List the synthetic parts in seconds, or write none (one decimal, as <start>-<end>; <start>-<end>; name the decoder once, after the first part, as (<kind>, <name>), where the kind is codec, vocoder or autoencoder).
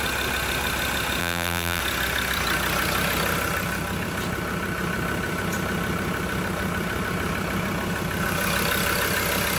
1.2-1.8 (vocoder, BigVGAN v2)